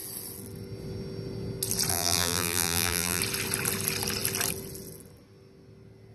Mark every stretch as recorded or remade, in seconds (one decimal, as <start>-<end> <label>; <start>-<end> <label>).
0.0-1.9 recorded; 1.9-3.2 remade; 3.2-6.1 recorded